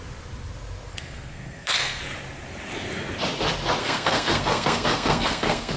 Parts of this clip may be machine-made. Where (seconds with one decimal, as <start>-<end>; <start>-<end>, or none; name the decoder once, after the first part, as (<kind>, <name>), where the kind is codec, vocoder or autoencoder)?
0.9-2.0 (codec, SNAC); 3.8-5.8